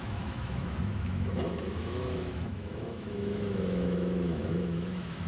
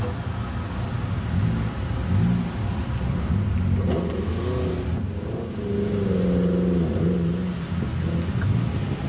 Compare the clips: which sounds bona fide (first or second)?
second